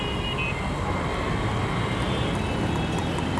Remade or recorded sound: recorded